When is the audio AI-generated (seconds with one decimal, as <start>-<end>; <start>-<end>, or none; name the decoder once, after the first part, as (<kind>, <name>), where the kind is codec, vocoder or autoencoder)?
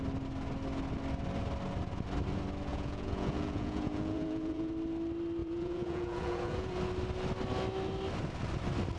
2.7-4.7 (vocoder, Vocos); 5.4-6.7